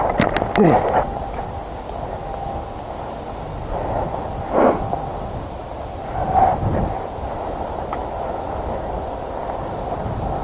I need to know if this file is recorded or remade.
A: recorded